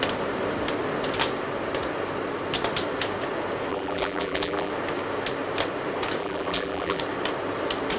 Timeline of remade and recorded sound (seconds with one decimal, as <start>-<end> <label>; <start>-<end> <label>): 0.0-3.7 recorded; 3.7-4.7 remade; 4.7-6.2 recorded; 6.2-7.0 remade; 7.0-8.0 recorded